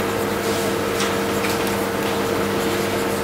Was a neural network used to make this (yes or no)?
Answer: no